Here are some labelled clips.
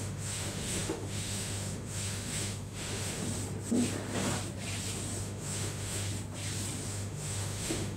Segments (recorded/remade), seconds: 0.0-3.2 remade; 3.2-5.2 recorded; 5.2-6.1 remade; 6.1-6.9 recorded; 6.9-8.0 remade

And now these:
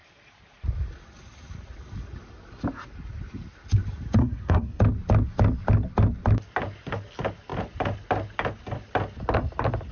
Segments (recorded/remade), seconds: 0.0-4.2 recorded; 4.2-4.8 remade; 4.8-9.9 recorded

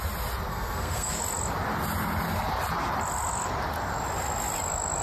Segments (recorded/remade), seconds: 0.0-0.5 recorded; 0.5-1.2 remade; 1.2-5.0 recorded

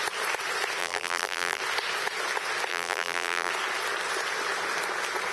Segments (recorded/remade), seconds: 0.0-0.8 recorded; 0.8-1.6 remade; 1.6-2.7 recorded; 2.7-3.5 remade; 3.5-5.3 recorded

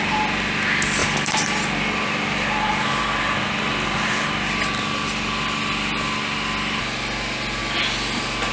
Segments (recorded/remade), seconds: 0.0-1.0 recorded; 1.0-3.0 remade; 3.0-8.5 recorded

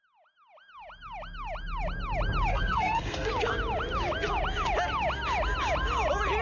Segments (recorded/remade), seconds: 0.0-2.5 recorded; 2.5-3.3 remade; 3.3-6.4 recorded

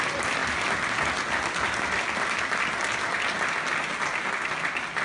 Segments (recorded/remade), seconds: 0.0-5.0 recorded

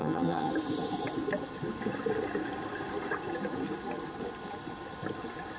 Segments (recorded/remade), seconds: 0.0-0.5 remade; 0.5-5.6 recorded